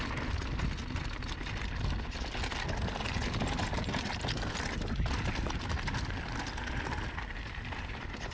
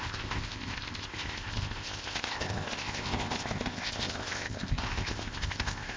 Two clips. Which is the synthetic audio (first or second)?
second